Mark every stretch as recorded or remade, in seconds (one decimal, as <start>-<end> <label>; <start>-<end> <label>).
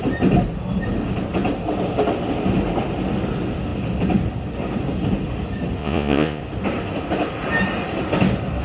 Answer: 0.0-5.8 recorded; 5.8-6.4 remade; 6.4-8.6 recorded